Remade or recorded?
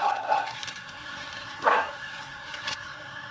remade